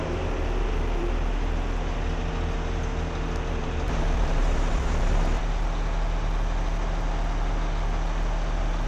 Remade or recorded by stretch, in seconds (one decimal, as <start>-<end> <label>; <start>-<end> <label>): 0.0-3.6 recorded; 3.6-5.4 remade; 5.4-8.9 recorded